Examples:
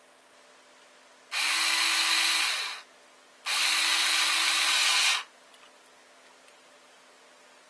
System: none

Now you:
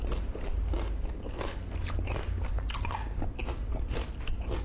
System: none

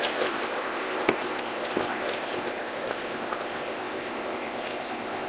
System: codec, ZipCodec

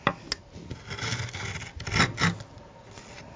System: none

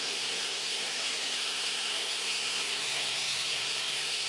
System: codec, SNAC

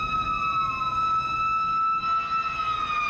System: none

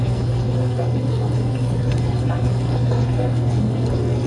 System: codec, SNAC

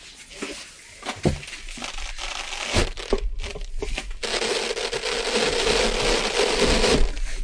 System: none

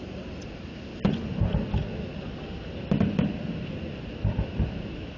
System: none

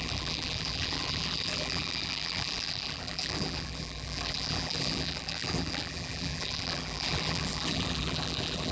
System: vocoder, BigVGAN v2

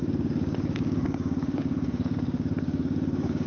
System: codec, DAC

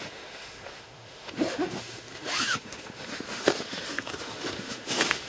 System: autoencoder, DAC-VAE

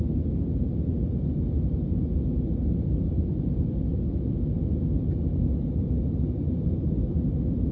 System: none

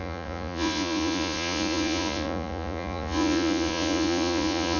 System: vocoder, Vocos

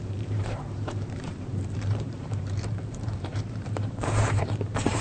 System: vocoder, BigVGAN v2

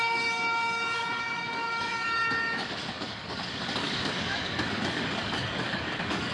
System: codec, DAC